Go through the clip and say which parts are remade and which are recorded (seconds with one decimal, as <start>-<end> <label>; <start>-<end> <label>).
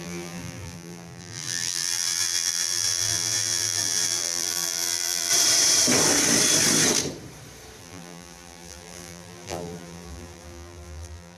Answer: 0.0-5.3 remade; 5.3-7.8 recorded; 7.8-11.4 remade